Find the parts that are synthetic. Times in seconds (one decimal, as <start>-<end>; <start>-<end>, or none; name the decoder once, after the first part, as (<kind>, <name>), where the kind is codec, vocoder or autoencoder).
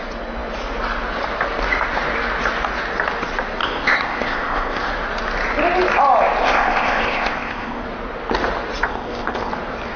3.6-4.9 (codec, ZipCodec); 6.4-7.8; 8.9-9.5